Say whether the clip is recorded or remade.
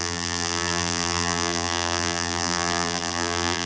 remade